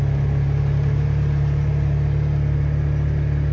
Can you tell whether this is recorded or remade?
recorded